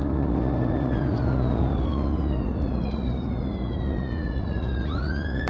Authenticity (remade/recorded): remade